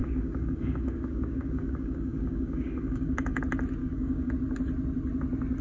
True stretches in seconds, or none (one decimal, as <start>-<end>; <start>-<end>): 3.4-3.8; 4.3-5.6